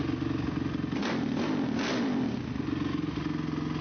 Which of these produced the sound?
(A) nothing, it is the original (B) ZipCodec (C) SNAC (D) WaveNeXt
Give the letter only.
A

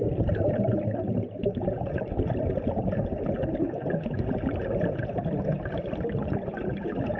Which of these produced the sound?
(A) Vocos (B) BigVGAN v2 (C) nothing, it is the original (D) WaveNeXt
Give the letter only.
C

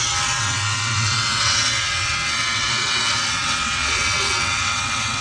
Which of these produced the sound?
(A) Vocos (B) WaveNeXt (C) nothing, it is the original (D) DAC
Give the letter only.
B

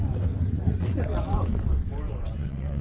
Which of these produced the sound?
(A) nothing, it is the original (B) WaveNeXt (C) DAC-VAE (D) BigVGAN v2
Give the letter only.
B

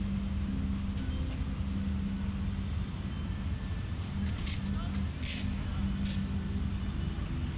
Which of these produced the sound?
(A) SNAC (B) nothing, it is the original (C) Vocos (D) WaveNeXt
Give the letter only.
B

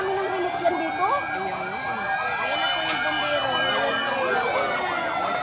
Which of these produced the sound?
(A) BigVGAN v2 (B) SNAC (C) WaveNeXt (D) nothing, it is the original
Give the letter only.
D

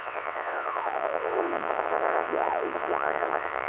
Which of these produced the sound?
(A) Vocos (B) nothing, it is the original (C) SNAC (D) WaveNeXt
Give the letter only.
D